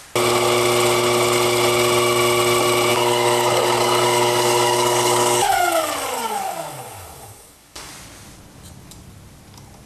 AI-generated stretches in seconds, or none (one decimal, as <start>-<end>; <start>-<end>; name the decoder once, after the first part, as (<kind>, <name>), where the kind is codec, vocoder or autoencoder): 2.9-7.9 (codec, DAC)